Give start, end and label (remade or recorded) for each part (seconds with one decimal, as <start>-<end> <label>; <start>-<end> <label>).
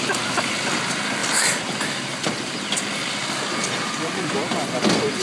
0.0-5.2 recorded